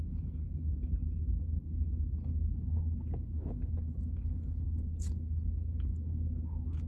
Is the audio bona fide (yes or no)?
no